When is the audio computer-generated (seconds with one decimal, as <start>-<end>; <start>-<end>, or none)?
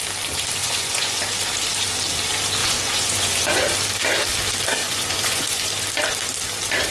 0.6-1.2; 2.6-3.6; 4.8-5.7